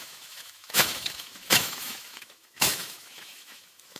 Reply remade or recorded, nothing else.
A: remade